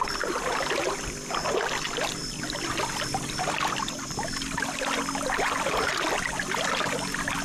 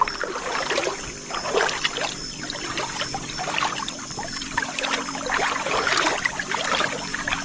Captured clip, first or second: first